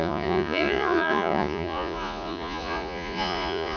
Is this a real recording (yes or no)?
no